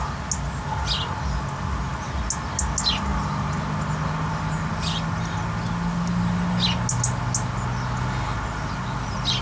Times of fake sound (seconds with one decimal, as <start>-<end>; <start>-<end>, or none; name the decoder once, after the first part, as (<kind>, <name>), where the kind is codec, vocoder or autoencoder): none